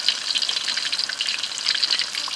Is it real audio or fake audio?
real